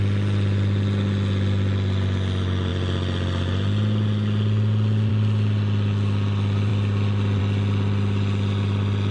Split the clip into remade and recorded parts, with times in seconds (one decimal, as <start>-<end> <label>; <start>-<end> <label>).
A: 0.0-9.1 recorded